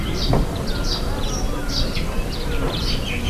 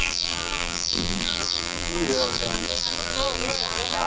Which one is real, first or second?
first